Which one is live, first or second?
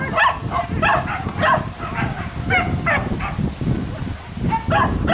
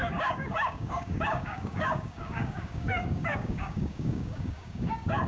first